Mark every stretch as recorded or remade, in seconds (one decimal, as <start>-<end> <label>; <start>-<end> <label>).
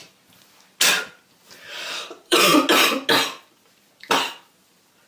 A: 0.0-0.9 recorded; 0.9-2.5 remade; 2.5-4.1 recorded; 4.1-5.1 remade